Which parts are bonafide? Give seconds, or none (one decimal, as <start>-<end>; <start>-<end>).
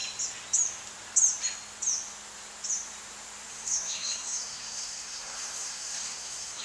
0.0-3.5